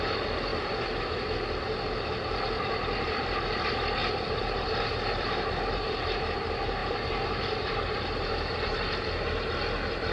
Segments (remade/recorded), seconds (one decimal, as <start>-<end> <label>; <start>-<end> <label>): 0.0-4.0 recorded; 4.0-6.0 remade; 6.0-6.8 recorded; 6.8-8.9 remade; 8.9-10.1 recorded